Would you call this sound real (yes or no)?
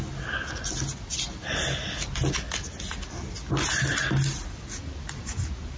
yes